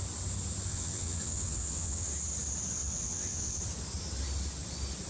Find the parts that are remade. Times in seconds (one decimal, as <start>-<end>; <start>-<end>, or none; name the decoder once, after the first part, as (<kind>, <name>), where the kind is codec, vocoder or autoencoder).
0.7-2.1 (vocoder, WaveNeXt); 2.8-3.6